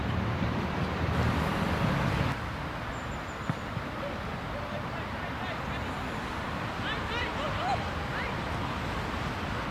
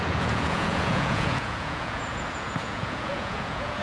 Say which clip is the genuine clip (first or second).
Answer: first